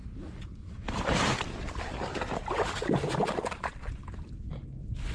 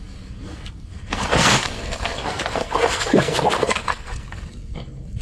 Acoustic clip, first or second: first